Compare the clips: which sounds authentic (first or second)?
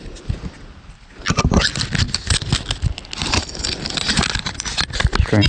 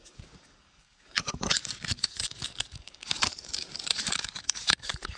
first